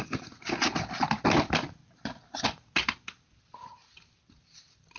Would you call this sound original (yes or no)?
yes